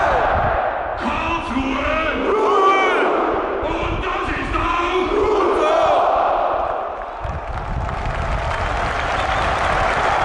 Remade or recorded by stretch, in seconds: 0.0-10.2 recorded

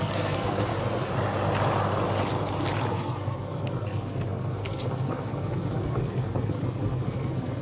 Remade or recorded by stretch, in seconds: 0.0-0.7 remade; 0.7-2.9 recorded; 2.9-7.6 remade